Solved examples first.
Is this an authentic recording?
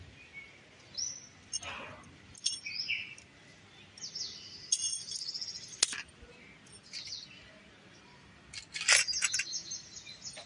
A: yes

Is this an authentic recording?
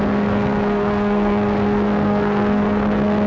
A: no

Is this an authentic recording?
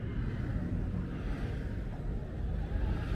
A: yes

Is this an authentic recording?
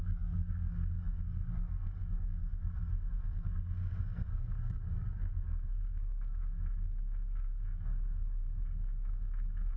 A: no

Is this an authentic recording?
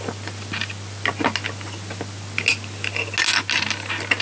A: yes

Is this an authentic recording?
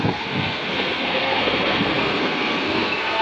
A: no